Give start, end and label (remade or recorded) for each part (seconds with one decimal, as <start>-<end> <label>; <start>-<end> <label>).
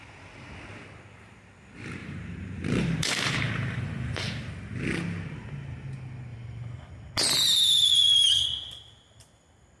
0.0-2.0 recorded; 2.0-4.5 remade; 4.5-6.3 recorded; 6.3-7.1 remade; 7.1-9.8 recorded